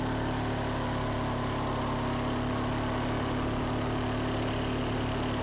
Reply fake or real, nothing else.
real